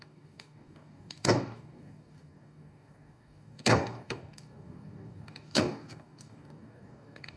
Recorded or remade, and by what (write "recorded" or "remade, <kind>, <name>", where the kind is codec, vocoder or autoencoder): remade, codec, DAC